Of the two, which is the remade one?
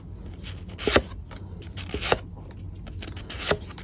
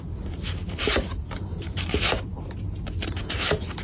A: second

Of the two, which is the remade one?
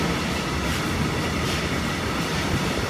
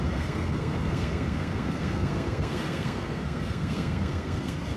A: second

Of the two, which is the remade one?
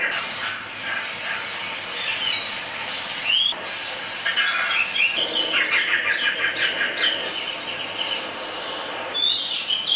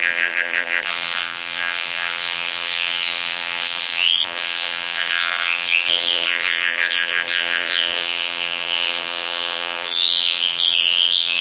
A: second